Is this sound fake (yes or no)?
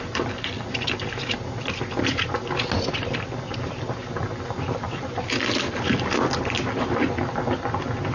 no